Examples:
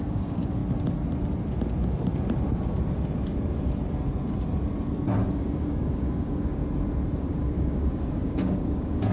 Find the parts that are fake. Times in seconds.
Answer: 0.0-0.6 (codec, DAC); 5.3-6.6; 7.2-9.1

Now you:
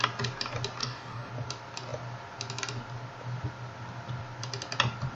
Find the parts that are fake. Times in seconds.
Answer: 0.8-1.3 (codec, DAC)

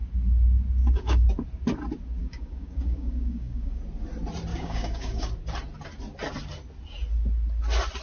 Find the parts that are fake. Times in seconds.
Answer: 0.8-1.3 (codec, DAC); 2.2-3.8; 4.5-5.3

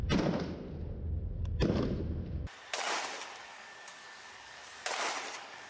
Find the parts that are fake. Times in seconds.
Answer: 3.4-4.6 (codec, DAC); 5.3-5.7